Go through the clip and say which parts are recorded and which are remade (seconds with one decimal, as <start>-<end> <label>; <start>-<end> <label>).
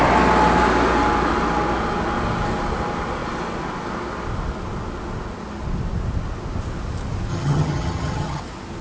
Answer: 0.0-7.3 recorded; 7.3-8.4 remade; 8.4-8.8 recorded